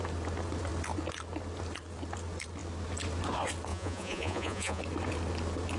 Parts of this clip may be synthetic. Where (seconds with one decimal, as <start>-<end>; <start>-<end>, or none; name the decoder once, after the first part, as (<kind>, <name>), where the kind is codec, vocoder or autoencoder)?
3.7-4.8 (vocoder, Vocos)